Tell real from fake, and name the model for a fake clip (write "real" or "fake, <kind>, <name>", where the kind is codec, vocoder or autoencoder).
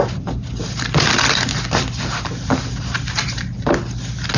real